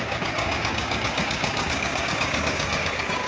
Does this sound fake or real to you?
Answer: fake